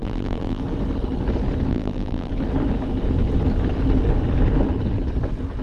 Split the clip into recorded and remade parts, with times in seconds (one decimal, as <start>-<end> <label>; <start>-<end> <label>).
0.0-0.6 remade; 0.6-1.7 recorded; 1.7-2.3 remade; 2.3-5.6 recorded